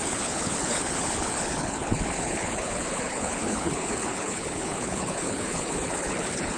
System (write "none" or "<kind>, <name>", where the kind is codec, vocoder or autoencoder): codec, HILCodec